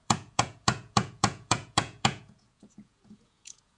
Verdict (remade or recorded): remade